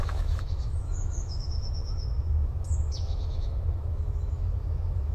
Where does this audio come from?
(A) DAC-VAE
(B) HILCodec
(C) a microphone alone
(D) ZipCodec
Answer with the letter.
A